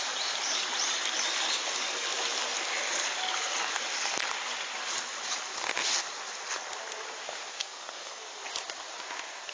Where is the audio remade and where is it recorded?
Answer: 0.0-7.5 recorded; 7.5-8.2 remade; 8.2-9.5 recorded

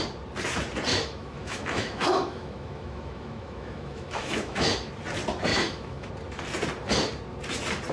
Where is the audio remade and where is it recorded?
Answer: 0.0-0.9 recorded; 0.9-4.9 remade; 4.9-5.5 recorded; 5.5-6.1 remade; 6.1-7.9 recorded

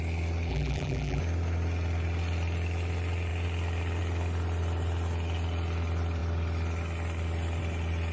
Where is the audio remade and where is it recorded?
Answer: 0.0-0.5 recorded; 0.5-1.2 remade; 1.2-8.1 recorded

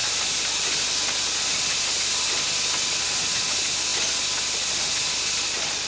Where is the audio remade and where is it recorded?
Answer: 0.0-5.9 recorded

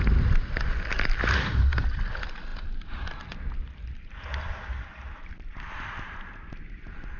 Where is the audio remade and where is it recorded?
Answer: 0.0-7.2 recorded